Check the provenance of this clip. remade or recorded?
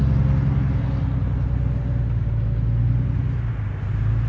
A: recorded